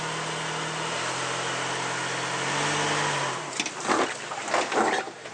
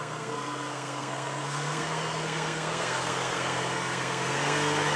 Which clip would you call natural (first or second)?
first